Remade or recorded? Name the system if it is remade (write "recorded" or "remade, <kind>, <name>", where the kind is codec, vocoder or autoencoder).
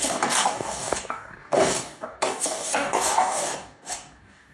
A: remade, codec, DAC